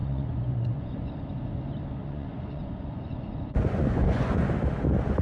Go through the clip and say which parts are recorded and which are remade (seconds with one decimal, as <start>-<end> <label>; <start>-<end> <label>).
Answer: 0.0-1.1 remade; 1.1-2.0 recorded; 2.0-4.5 remade; 4.5-5.2 recorded